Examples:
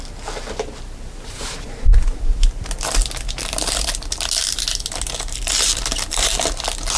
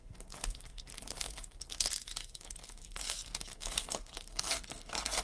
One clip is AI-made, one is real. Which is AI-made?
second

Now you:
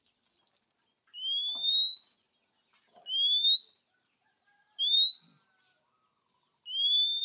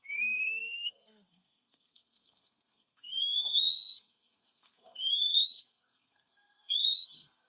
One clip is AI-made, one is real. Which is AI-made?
second